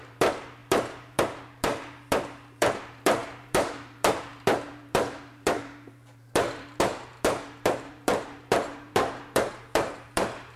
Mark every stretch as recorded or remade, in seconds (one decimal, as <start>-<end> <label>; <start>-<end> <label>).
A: 0.0-10.6 remade